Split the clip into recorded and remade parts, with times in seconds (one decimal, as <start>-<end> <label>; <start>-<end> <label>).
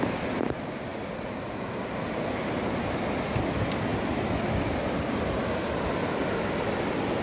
0.0-7.2 recorded